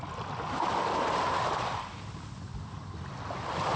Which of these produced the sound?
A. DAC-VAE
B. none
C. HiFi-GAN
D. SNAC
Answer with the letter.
B